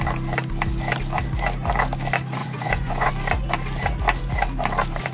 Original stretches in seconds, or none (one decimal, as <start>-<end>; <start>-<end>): 0.0-2.4; 3.1-5.1